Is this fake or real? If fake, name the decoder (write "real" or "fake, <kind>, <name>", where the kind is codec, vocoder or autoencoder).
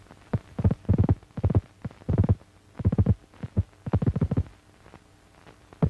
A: real